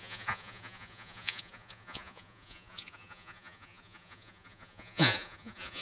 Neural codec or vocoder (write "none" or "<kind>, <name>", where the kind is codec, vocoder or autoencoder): vocoder, Vocos